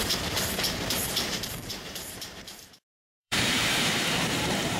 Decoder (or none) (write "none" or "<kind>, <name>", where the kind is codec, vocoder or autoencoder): vocoder, BigVGAN v2